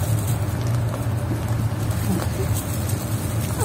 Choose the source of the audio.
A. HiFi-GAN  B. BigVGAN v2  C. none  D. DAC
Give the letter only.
C